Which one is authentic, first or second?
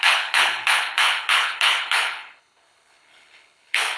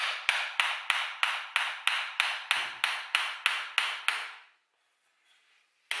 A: second